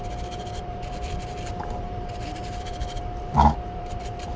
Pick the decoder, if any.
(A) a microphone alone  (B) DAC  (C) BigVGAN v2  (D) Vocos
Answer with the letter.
C